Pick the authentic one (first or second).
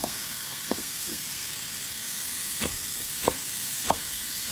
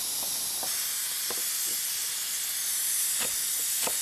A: second